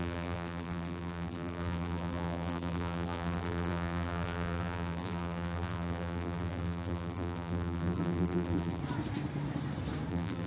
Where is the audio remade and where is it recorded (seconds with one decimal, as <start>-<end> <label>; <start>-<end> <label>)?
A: 0.0-8.8 remade; 8.8-10.1 recorded; 10.1-10.5 remade